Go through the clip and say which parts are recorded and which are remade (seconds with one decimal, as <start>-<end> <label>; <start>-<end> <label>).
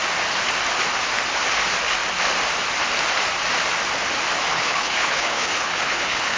0.0-4.5 recorded; 4.5-6.4 remade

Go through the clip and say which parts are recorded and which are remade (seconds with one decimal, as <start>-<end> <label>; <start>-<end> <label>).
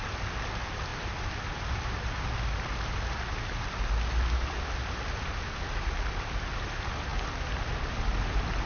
0.0-8.7 recorded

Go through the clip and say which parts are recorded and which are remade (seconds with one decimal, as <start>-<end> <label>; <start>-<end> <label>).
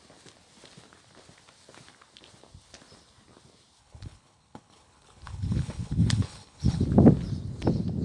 0.0-3.8 recorded; 3.8-6.8 remade; 6.8-8.0 recorded